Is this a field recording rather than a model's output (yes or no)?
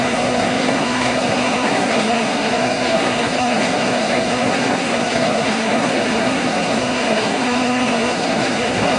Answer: no